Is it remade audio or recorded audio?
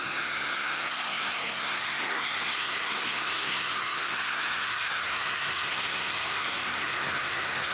remade